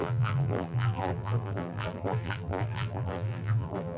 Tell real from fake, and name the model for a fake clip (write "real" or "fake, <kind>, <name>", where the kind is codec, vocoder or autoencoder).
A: fake, vocoder, BigVGAN v2